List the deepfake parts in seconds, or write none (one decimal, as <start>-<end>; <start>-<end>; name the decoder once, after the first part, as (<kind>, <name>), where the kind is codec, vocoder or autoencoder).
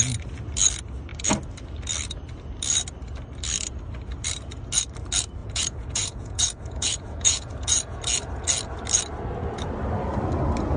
5.4-8.0 (vocoder, Vocos)